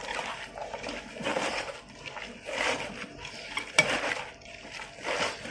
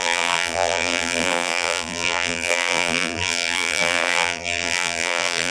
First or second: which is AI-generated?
second